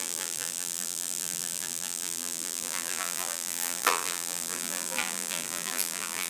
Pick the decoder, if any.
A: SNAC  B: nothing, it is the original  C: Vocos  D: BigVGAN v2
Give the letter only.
D